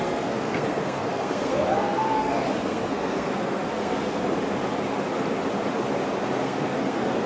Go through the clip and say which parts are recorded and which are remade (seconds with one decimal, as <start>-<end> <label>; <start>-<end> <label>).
0.0-4.3 remade; 4.3-6.3 recorded; 6.3-7.3 remade